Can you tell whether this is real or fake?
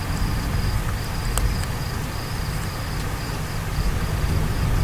real